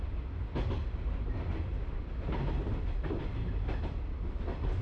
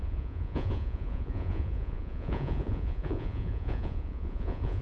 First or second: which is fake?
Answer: second